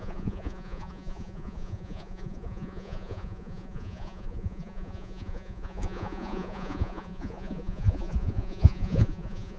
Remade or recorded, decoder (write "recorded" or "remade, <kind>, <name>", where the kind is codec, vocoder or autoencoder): remade, vocoder, Vocos